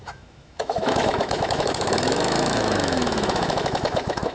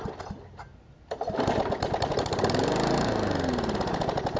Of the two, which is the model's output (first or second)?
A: first